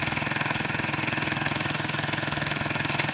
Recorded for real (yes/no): no